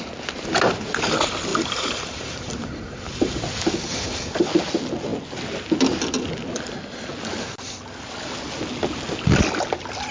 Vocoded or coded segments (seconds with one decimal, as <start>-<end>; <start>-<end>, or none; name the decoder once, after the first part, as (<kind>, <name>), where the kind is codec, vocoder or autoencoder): 1.5-3.4 (vocoder, BigVGAN v2); 3.9-4.4